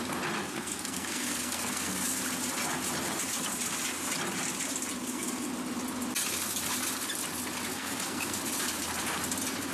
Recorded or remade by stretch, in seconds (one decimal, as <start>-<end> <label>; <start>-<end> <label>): 0.0-0.4 recorded; 0.4-2.2 remade; 2.2-5.0 recorded; 5.0-5.5 remade; 5.5-7.7 recorded; 7.7-8.4 remade; 8.4-9.7 recorded